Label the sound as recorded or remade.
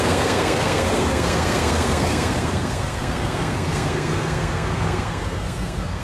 remade